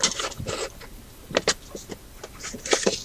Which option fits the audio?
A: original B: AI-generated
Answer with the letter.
A